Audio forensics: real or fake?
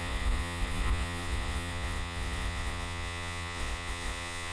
fake